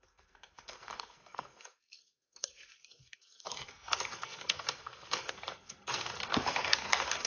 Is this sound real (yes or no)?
no